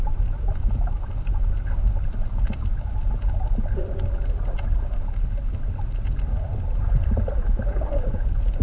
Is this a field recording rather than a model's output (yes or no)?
yes